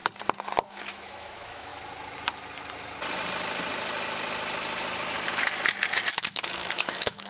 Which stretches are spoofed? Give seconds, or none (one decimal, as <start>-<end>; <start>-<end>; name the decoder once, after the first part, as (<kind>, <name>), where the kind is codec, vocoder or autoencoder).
0.7-1.7 (autoencoder, DAC-VAE); 6.1-7.3